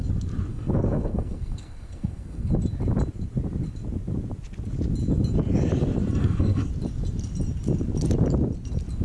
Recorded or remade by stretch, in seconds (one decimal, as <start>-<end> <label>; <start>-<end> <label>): 0.0-0.5 recorded; 0.5-2.5 remade; 2.5-6.2 recorded; 6.2-6.7 remade; 6.7-9.0 recorded